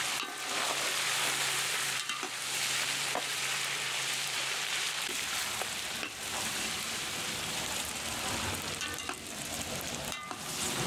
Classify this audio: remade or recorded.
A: remade